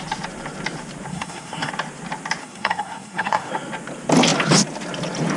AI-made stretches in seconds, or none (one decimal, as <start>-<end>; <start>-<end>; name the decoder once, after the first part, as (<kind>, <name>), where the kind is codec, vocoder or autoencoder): 1.1-1.7 (codec, SNAC); 2.4-3.5